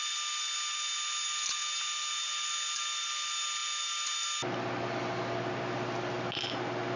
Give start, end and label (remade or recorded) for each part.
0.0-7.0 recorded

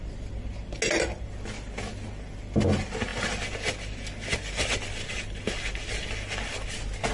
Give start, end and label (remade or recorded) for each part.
0.0-7.1 recorded

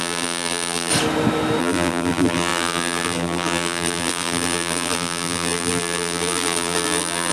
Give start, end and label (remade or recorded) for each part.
0.0-0.9 remade; 0.9-1.6 recorded; 1.6-7.3 remade

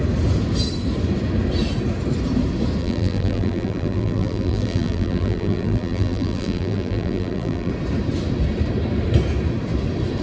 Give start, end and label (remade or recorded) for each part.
0.0-2.8 recorded; 2.8-7.7 remade; 7.7-10.2 recorded

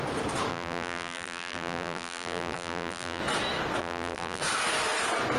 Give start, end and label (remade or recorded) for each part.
0.0-0.5 recorded; 0.5-3.2 remade; 3.2-3.8 recorded; 3.8-4.4 remade; 4.4-5.4 recorded

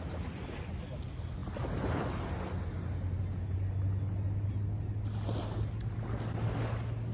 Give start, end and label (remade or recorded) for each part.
0.0-7.1 recorded